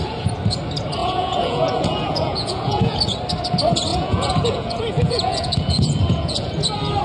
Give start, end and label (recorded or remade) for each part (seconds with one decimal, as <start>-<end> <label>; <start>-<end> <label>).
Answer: 0.0-1.0 recorded; 1.0-3.0 remade; 3.0-3.9 recorded; 3.9-6.5 remade; 6.5-7.0 recorded